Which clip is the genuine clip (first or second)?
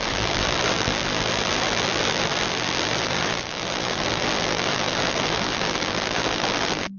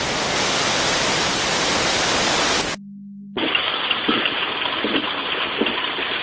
second